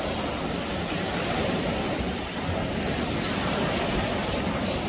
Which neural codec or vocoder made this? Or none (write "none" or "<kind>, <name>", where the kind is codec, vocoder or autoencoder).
none